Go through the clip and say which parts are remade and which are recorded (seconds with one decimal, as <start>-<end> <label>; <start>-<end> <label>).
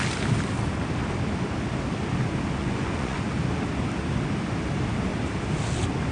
0.0-2.6 recorded; 2.6-3.2 remade; 3.2-6.1 recorded